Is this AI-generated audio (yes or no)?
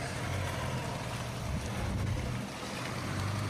no